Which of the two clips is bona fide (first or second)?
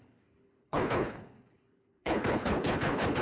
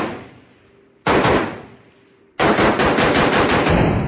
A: second